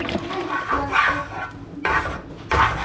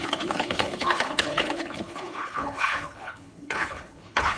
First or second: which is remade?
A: second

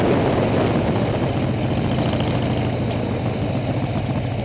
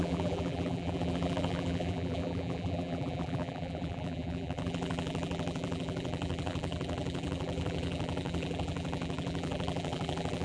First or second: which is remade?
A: second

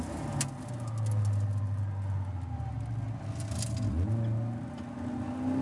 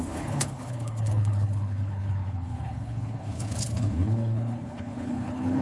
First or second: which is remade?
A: second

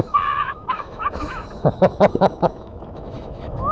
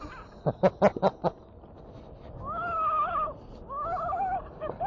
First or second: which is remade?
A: first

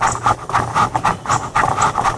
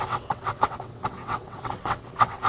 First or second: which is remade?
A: second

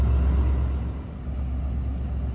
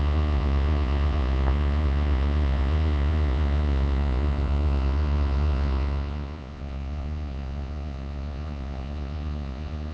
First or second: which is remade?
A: second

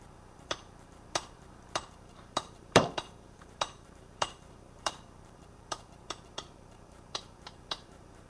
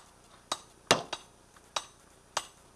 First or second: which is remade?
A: first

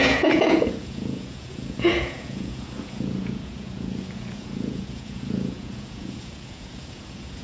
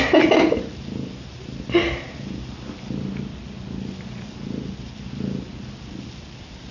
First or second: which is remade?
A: first